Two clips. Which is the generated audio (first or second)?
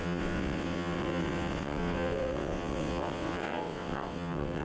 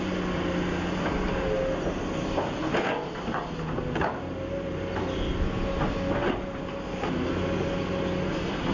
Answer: first